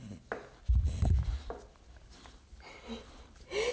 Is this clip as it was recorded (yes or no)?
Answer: yes